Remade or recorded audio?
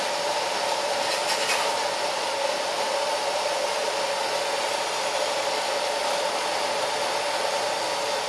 recorded